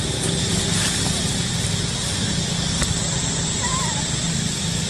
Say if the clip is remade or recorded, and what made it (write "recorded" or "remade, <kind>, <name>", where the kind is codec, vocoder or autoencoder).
recorded